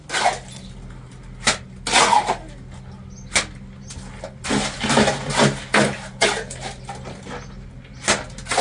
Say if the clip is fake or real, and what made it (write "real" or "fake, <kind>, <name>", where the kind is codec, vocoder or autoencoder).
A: real